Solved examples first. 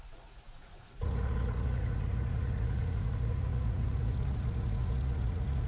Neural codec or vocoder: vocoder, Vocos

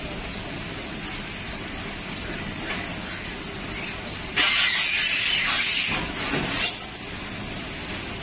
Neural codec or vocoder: none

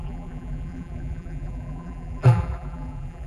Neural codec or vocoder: vocoder, BigVGAN v2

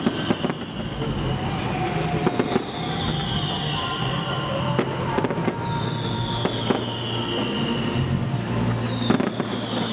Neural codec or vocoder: none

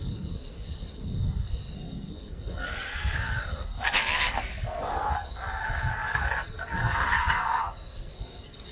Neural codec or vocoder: codec, SNAC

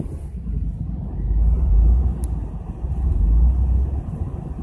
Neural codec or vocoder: none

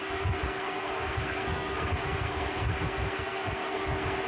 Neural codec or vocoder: codec, SNAC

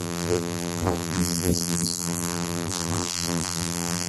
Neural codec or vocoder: vocoder, BigVGAN v2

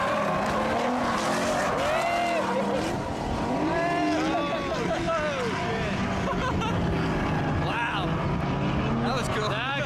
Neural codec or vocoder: none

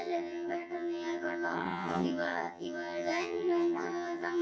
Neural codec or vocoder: vocoder, HiFi-GAN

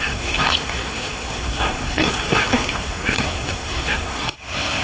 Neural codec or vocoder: codec, SNAC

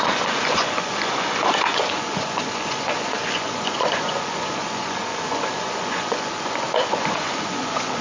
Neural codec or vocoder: vocoder, Vocos